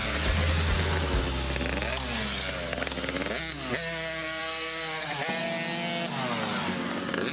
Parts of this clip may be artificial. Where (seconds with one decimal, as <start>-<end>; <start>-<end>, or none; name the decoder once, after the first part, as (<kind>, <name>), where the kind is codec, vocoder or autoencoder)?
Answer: none